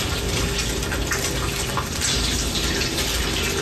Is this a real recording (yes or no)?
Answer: yes